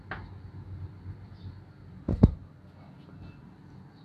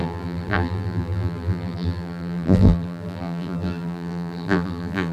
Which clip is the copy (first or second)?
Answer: second